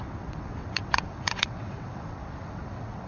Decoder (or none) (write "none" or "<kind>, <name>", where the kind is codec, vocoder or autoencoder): vocoder, WaveNeXt